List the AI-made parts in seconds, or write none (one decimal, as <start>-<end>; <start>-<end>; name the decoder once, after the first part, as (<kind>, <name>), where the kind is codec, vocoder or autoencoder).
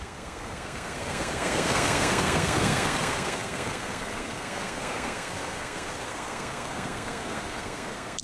0.0-8.2 (codec, SNAC)